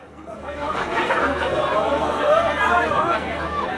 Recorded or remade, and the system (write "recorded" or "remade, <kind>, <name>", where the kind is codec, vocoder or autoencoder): remade, codec, SNAC